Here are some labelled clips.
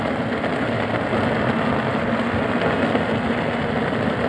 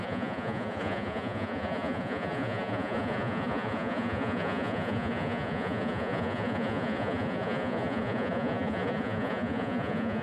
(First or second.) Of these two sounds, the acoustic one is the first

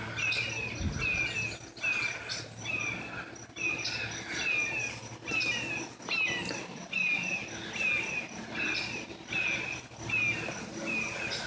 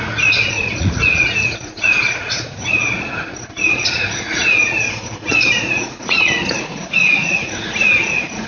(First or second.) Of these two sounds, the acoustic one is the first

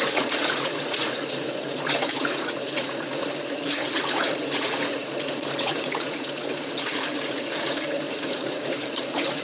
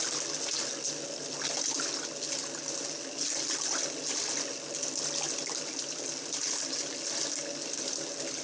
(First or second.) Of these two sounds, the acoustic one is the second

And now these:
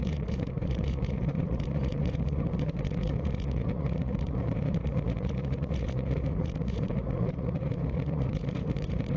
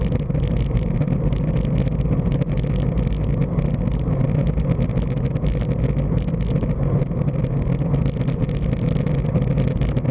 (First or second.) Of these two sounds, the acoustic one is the second